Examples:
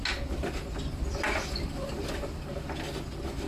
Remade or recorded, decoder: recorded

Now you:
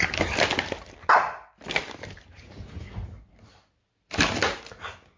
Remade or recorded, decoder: recorded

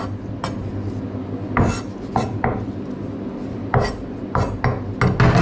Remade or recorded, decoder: recorded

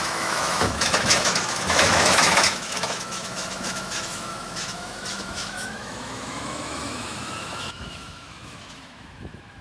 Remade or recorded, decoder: remade, autoencoder, DAC-VAE